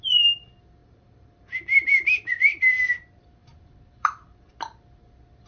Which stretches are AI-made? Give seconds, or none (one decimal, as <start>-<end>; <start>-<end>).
0.8-2.3; 3.4-4.5

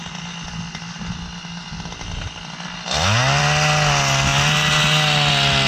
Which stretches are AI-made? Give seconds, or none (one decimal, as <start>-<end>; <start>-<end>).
none

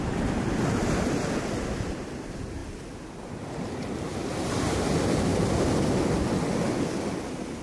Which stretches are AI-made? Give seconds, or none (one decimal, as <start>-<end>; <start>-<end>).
2.6-5.6